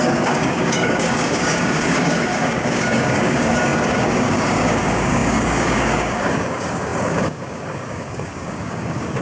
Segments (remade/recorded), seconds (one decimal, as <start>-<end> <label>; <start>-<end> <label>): 0.0-9.2 remade